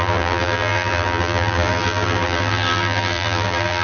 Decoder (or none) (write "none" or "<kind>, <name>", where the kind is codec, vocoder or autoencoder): vocoder, BigVGAN v2